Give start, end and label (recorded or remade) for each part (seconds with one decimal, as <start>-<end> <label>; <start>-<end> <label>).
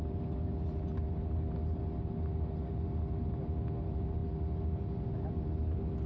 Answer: 0.0-6.1 recorded